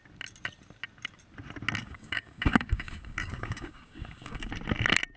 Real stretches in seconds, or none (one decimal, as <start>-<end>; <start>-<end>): 0.0-1.8; 4.5-5.2